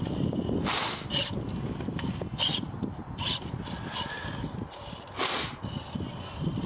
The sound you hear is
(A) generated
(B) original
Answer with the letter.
B